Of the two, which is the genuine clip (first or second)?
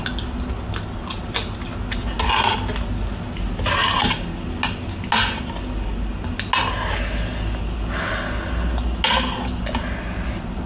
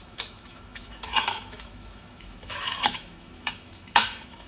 first